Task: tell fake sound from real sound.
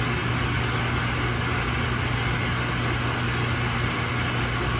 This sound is real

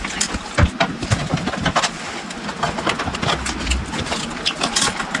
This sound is real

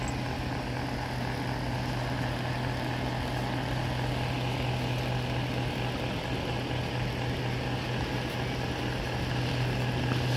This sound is real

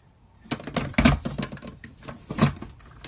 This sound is real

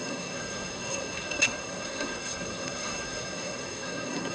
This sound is fake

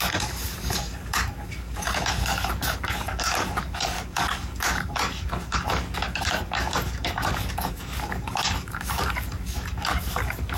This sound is fake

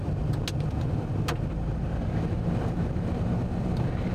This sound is real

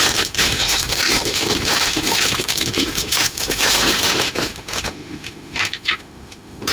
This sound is fake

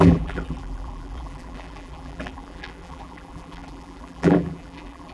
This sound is fake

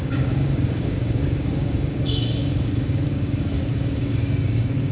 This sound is fake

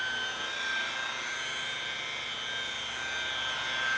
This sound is real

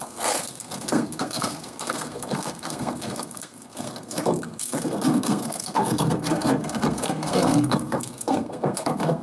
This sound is fake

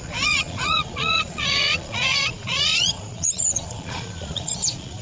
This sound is fake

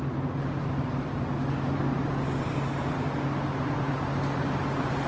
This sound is real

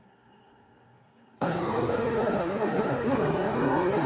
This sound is fake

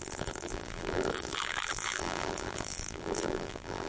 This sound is fake